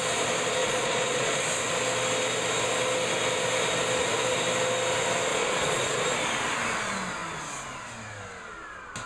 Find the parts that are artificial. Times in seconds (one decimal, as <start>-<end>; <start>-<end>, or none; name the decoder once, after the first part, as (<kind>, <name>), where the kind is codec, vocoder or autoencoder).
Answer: 0.6-1.4 (vocoder, Vocos); 5.3-6.0